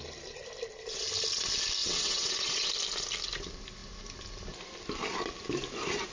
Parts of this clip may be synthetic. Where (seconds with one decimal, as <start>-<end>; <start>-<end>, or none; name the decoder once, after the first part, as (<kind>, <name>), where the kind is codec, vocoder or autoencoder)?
1.8-2.7 (vocoder, WaveNeXt)